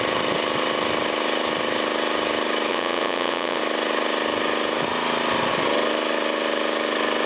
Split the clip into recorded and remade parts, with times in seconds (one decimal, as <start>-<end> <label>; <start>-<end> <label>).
0.0-2.7 recorded; 2.7-3.6 remade; 3.6-7.3 recorded